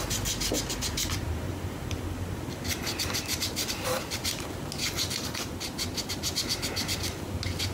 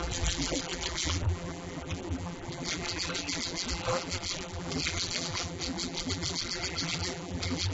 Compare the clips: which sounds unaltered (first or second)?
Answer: first